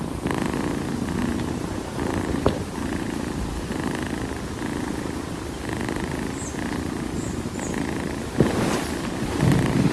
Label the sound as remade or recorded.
remade